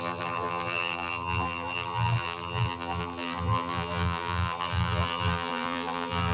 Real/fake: fake